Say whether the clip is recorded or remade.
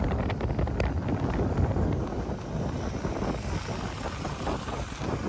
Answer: recorded